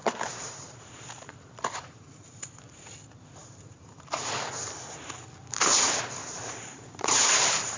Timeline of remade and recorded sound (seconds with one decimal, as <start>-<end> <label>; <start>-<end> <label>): 0.0-2.5 remade; 2.5-3.4 recorded; 3.4-4.5 remade; 4.5-6.2 recorded; 6.2-7.8 remade